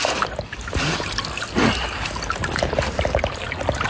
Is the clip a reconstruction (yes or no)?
no